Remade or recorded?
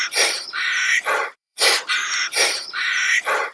remade